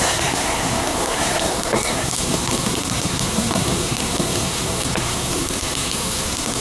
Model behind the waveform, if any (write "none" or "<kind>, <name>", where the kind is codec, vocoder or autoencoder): codec, SNAC